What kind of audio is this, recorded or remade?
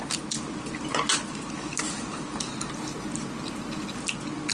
recorded